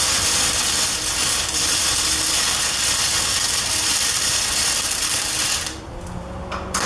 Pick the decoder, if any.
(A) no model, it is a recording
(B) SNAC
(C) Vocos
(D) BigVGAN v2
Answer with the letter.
D